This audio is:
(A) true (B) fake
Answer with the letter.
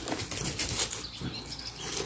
A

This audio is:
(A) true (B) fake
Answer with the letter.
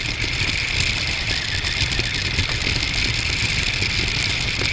A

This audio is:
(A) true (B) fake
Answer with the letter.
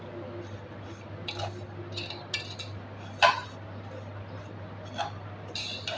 A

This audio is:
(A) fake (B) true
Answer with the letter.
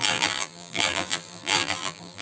A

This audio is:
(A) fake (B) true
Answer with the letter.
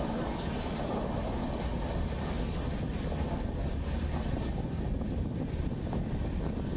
B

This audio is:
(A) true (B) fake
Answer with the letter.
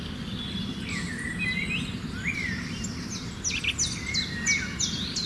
A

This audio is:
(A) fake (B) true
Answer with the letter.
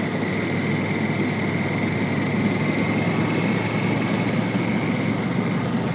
B